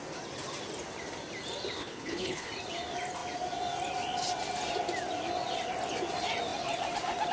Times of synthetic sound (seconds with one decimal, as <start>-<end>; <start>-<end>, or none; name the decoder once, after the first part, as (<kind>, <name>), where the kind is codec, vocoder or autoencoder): 1.8-2.5 (codec, HILCodec)